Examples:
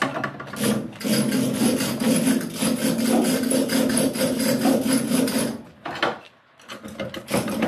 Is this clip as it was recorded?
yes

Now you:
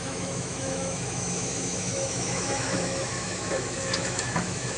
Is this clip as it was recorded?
no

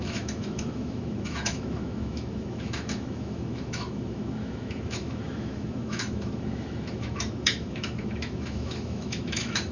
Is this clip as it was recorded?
no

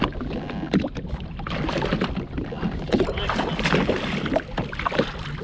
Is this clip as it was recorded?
yes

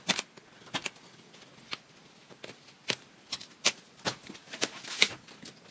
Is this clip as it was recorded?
yes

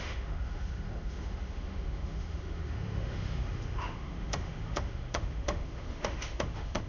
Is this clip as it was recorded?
no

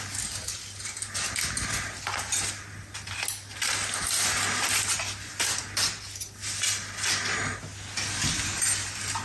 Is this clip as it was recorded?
yes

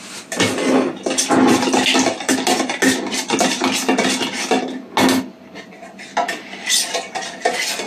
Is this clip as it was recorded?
yes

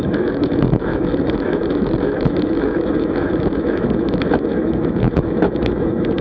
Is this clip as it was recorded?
no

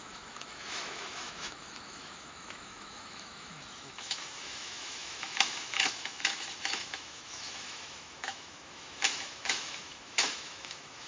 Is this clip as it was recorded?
no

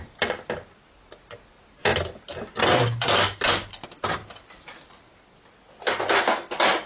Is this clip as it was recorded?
yes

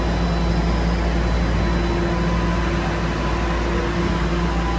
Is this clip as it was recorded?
yes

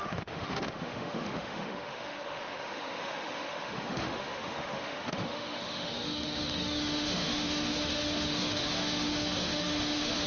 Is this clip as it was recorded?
no